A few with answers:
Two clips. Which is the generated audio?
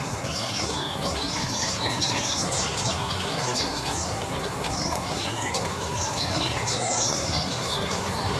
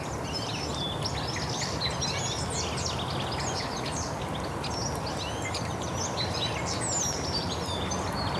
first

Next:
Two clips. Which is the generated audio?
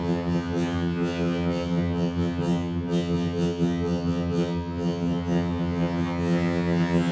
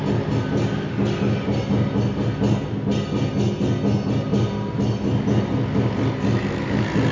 first